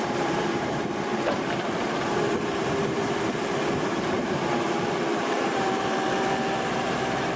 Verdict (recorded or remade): remade